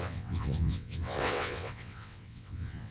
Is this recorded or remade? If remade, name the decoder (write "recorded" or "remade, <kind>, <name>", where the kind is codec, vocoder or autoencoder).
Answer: remade, vocoder, WaveNeXt